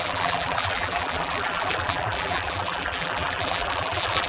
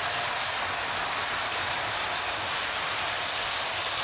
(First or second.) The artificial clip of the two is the first